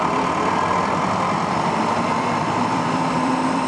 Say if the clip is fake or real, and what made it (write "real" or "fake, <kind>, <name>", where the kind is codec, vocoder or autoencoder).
fake, vocoder, BigVGAN v2